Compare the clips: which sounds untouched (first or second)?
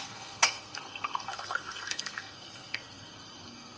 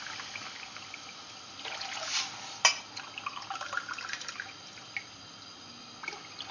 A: second